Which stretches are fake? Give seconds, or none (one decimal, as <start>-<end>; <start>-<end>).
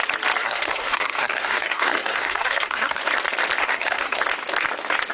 0.4-3.0; 3.6-4.2